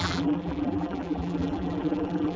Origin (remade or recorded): remade